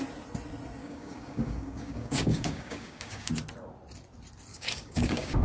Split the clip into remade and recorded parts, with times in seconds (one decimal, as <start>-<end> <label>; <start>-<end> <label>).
0.0-0.8 recorded; 0.8-3.3 remade; 3.3-4.5 recorded; 4.5-5.4 remade